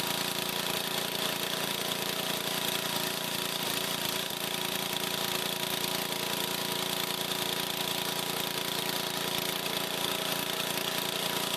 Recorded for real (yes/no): yes